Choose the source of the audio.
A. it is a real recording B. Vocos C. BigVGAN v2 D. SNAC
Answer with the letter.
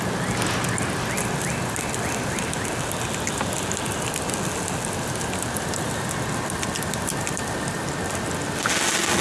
A